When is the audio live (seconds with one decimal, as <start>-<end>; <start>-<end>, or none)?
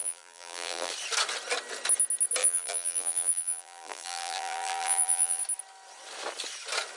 0.9-2.4; 5.4-7.0